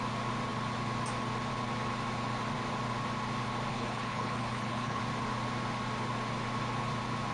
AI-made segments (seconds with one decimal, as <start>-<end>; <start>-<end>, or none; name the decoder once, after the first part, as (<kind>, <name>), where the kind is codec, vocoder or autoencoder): 3.7-5.0 (codec, HILCodec)